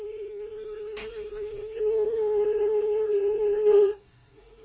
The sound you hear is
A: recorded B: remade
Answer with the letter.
B